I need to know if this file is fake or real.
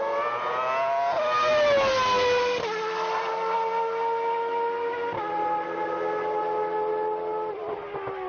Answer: real